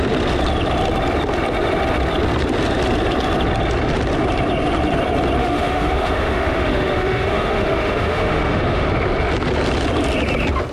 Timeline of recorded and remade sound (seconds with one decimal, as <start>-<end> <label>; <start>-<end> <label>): 0.0-5.4 recorded; 5.4-8.9 remade; 8.9-10.7 recorded